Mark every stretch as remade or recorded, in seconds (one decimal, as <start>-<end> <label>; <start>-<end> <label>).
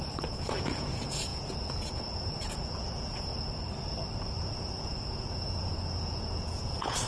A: 0.0-3.3 remade; 3.3-4.4 recorded; 4.4-7.1 remade